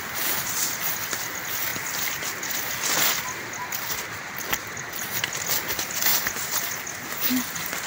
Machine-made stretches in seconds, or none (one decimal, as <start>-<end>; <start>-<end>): none